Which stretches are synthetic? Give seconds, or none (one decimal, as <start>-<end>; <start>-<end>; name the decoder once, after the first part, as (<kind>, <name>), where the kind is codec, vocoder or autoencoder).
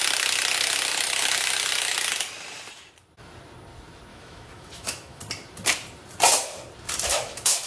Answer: 4.1-5.2 (autoencoder, DAC-VAE); 7.1-7.7